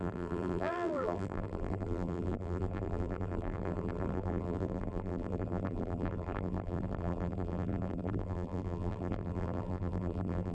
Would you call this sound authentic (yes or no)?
no